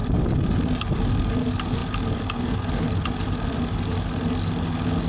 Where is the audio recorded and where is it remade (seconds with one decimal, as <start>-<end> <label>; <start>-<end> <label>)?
0.0-5.1 recorded